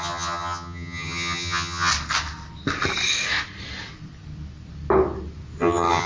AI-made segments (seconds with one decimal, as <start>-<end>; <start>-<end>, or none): 0.0-1.9; 5.6-6.1